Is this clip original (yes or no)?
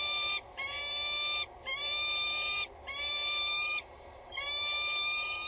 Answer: yes